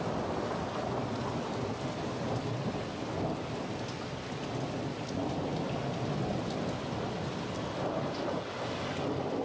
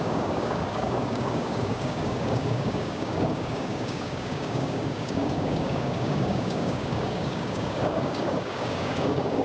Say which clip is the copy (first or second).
second